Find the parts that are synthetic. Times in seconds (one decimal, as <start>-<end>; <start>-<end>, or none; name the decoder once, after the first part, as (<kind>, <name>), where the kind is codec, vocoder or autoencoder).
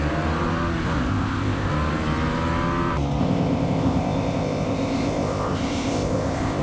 1.1-1.7 (codec, ZipCodec); 3.2-6.6